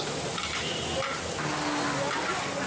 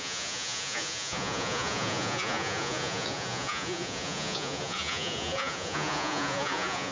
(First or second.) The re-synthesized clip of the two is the second